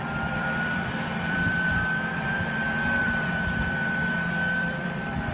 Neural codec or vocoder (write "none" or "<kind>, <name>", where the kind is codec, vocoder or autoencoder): vocoder, BigVGAN v2